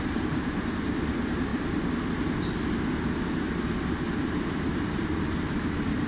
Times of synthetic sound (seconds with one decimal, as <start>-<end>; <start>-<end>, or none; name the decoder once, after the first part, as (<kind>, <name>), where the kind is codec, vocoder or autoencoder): 0.0-1.5 (vocoder, BigVGAN v2); 4.3-6.1